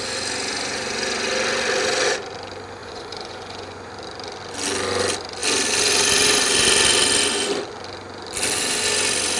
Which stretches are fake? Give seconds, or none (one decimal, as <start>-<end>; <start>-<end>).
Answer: 2.8-3.9